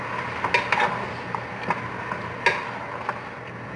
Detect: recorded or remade recorded